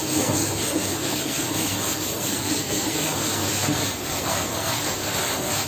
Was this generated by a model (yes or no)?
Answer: yes